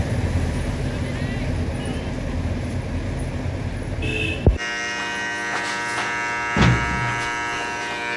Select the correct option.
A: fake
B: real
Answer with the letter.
B